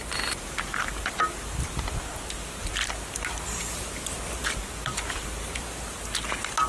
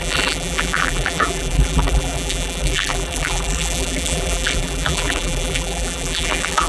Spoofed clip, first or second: second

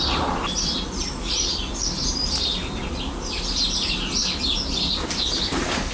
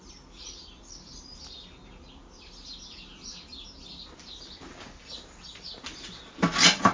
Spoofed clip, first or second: first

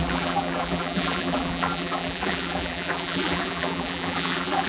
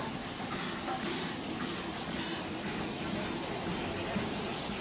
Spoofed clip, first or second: first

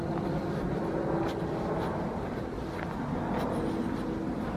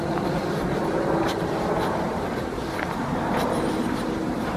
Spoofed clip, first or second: second